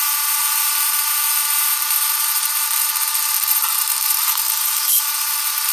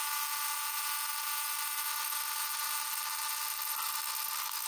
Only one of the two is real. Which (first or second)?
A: second